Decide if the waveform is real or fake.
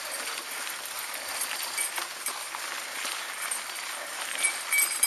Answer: real